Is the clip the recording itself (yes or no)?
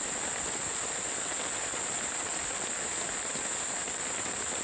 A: yes